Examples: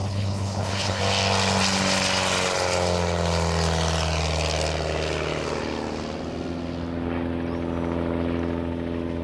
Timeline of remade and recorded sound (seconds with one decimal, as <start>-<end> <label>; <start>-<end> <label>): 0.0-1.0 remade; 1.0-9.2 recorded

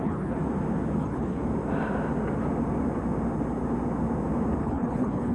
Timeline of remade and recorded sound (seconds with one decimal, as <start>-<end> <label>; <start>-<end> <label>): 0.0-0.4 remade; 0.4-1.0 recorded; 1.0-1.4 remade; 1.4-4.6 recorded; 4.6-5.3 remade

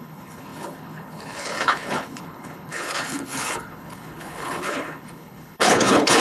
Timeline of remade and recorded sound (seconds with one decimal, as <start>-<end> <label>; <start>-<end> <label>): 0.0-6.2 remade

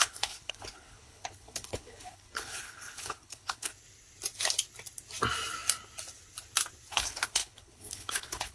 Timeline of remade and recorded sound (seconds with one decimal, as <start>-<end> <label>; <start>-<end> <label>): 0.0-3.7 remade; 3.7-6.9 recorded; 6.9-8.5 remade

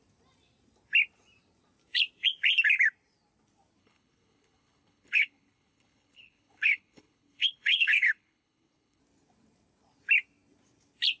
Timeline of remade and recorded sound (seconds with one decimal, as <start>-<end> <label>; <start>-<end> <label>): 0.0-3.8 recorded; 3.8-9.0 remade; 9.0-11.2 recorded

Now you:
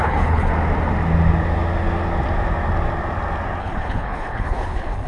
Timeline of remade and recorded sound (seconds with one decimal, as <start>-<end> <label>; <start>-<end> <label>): 0.0-0.5 remade; 0.5-3.6 recorded; 3.6-5.1 remade